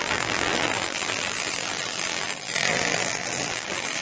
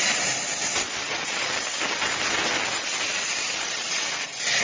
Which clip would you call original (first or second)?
second